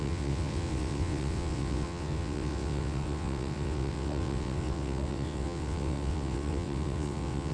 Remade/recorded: remade